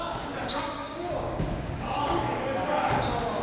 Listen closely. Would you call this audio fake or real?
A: fake